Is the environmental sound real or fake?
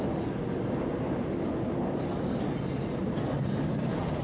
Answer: real